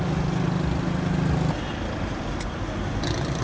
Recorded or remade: recorded